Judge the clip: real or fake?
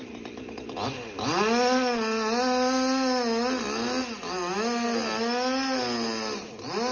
real